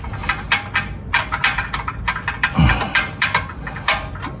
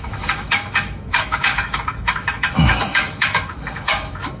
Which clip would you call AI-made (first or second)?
second